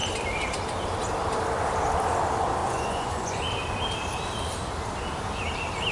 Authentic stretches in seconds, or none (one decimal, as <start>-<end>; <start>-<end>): 0.0-2.6; 3.4-5.9

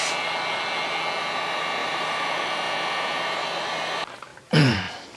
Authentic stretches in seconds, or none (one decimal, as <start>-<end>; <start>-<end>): 0.0-1.8; 2.5-4.3; 4.8-5.2

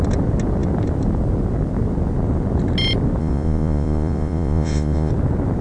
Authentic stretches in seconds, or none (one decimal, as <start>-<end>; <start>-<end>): 0.0-3.2; 5.1-5.6

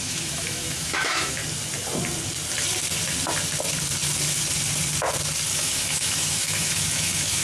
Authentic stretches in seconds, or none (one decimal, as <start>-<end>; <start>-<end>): 1.4-5.5

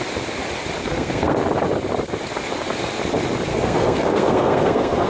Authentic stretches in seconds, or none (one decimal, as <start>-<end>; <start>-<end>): 0.0-0.8; 1.4-3.5

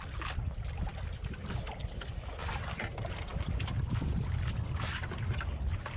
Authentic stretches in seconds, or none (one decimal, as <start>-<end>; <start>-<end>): 0.0-6.0